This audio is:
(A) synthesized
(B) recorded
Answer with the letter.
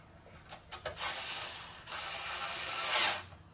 B